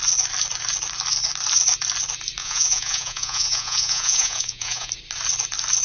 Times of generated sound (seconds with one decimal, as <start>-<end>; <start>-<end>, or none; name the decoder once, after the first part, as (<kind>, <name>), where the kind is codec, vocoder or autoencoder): 2.4-4.9 (vocoder, Vocos)